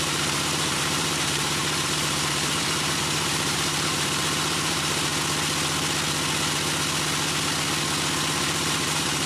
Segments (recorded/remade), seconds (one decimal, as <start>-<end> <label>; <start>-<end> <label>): 0.0-5.1 remade; 5.1-8.3 recorded; 8.3-9.3 remade